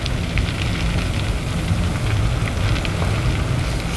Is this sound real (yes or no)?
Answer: yes